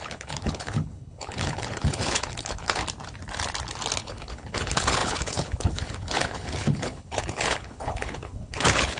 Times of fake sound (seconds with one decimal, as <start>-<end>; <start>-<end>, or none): 0.0-2.8; 4.0-9.0